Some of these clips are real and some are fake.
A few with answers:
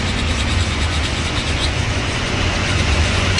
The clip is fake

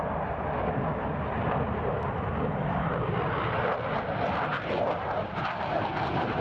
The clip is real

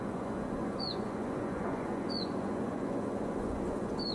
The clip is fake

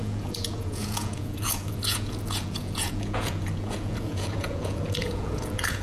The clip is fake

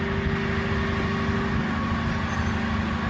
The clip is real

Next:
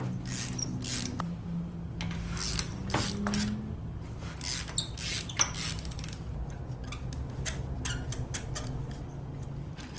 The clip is real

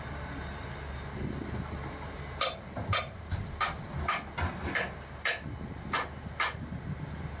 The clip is real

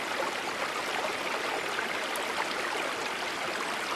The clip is real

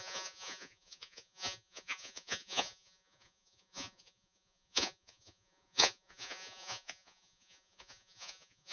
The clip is fake